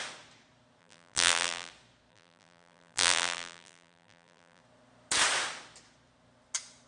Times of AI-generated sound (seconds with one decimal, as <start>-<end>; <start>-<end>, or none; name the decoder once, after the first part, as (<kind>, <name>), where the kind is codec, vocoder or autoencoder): 0.8-1.7 (vocoder, BigVGAN v2); 2.1-4.6